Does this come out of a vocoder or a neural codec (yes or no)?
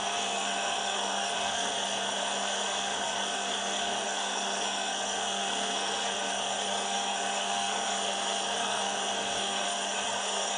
yes